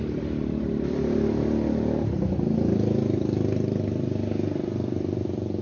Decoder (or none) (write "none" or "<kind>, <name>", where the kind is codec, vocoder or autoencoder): none